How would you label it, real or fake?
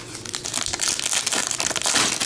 real